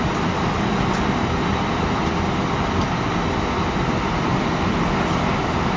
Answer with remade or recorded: recorded